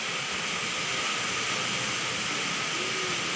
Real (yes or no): yes